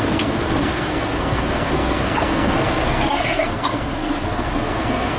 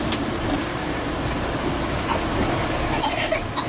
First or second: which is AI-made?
first